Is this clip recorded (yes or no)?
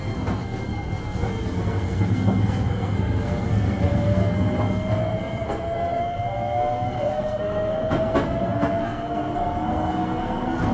no